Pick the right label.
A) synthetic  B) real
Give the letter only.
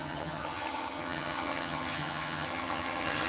A